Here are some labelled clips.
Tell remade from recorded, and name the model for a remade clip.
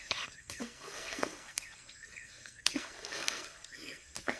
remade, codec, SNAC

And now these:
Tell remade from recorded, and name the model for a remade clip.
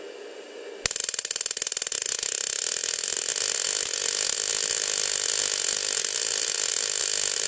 recorded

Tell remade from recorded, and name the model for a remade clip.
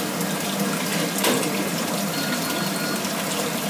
recorded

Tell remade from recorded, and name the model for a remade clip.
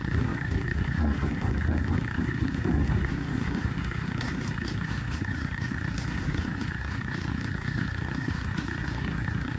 remade, codec, SNAC